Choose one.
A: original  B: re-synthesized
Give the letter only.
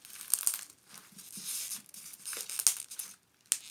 A